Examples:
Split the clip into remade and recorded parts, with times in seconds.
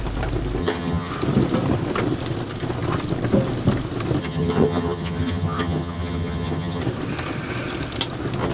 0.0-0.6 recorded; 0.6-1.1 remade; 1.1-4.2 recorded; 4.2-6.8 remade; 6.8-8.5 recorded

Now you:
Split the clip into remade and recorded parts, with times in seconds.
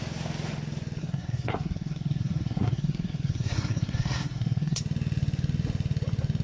0.0-1.0 recorded; 1.0-4.8 remade; 4.8-6.4 recorded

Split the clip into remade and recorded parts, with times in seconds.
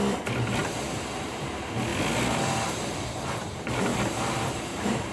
0.0-0.6 recorded; 0.6-1.4 remade; 1.4-3.9 recorded; 3.9-5.1 remade